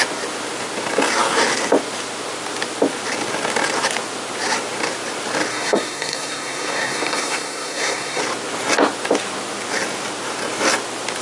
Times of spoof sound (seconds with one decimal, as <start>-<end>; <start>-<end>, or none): 5.5-8.2